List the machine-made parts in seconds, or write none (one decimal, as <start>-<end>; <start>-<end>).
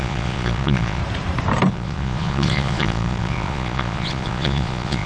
0.0-1.0; 1.7-5.1